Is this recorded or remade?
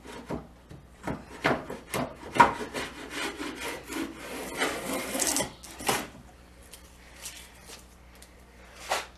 recorded